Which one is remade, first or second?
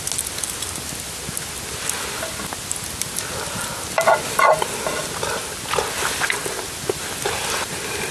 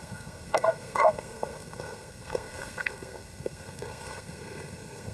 second